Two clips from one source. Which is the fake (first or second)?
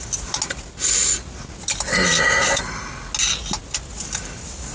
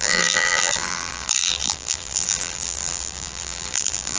second